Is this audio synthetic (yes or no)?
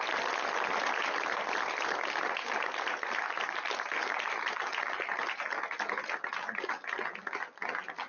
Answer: no